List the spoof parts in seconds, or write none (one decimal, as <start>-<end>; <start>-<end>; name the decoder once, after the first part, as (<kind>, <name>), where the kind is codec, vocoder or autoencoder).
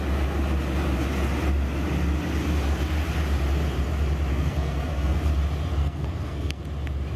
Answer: 4.3-5.3 (codec, SNAC); 5.8-6.6